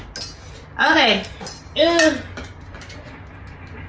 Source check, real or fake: real